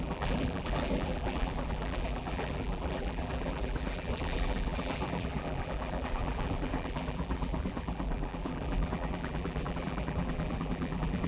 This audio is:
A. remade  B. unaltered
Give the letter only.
A